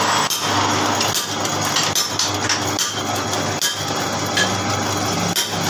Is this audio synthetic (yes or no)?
no